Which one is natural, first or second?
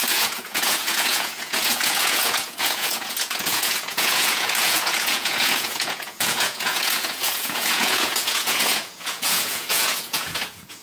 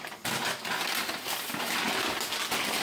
second